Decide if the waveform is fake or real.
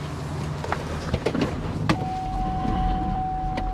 real